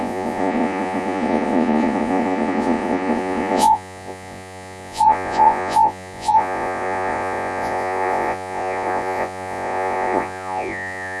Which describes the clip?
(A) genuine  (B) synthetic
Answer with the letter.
B